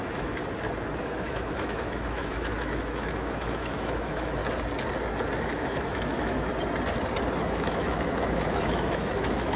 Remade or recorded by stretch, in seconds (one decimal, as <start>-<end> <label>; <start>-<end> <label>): 0.0-0.4 remade; 0.4-1.0 recorded; 1.0-4.4 remade; 4.4-5.4 recorded; 5.4-6.5 remade; 6.5-7.4 recorded; 7.4-9.6 remade

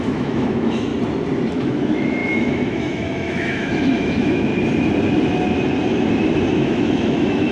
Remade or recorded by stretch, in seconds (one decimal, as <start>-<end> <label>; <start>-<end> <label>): 0.0-0.9 remade; 0.9-1.5 recorded; 1.5-4.5 remade; 4.5-6.5 recorded; 6.5-7.5 remade

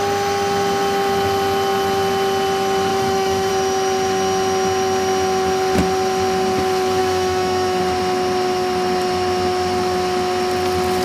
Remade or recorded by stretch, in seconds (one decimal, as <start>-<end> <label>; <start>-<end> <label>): 0.0-2.9 recorded; 2.9-3.5 remade; 3.5-7.0 recorded; 7.0-7.8 remade; 7.8-11.0 recorded